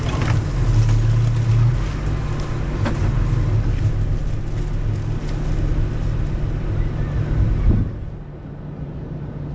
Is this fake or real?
real